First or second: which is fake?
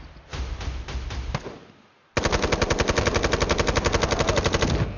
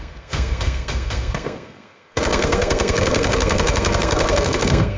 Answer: second